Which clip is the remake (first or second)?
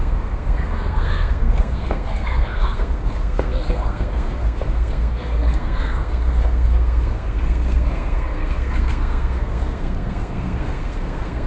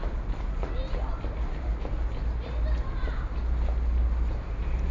first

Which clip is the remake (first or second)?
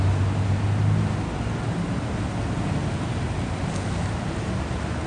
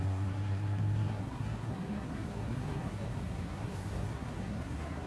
second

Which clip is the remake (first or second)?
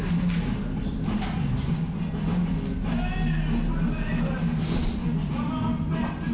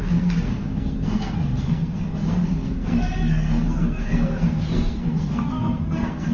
second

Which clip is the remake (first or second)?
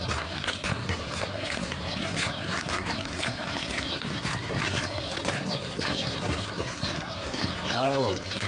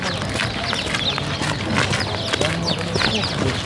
first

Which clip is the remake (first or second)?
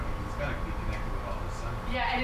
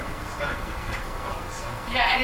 second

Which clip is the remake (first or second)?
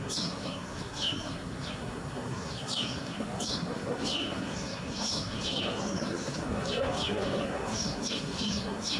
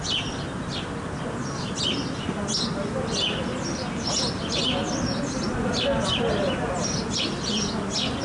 first